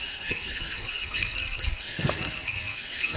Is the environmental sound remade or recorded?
remade